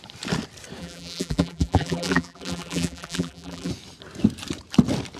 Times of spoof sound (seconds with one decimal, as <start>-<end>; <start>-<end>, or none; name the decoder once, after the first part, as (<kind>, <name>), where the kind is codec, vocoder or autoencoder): 0.8-3.7 (vocoder, BigVGAN v2)